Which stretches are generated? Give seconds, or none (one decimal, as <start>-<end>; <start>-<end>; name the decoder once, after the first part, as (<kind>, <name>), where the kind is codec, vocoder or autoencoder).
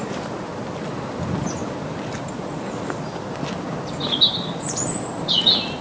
none